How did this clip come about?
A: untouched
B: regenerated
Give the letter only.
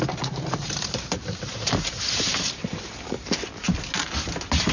A